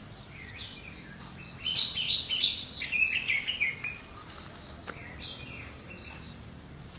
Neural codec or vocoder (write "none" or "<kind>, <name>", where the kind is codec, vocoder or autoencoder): none